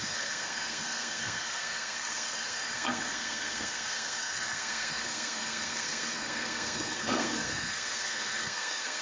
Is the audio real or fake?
fake